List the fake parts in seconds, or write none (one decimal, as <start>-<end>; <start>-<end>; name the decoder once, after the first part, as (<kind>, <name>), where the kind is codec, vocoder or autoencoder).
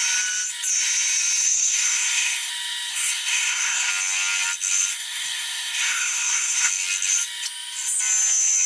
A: 1.4-2.5 (codec, SNAC); 2.9-3.9; 4.9-6.7